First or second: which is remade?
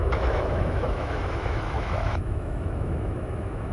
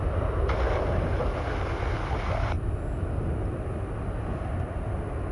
first